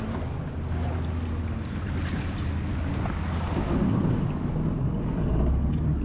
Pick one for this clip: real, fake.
real